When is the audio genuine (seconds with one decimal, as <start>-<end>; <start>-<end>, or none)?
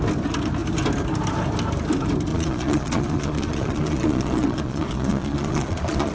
0.0-2.3